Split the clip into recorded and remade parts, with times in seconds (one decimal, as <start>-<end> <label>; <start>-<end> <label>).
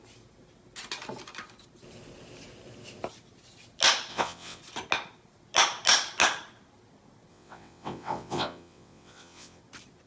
0.0-4.1 recorded; 4.1-4.6 remade; 4.6-7.3 recorded; 7.3-9.6 remade; 9.6-10.1 recorded